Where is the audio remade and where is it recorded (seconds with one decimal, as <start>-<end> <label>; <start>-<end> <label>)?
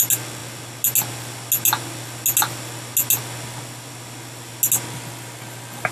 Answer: 0.0-5.9 recorded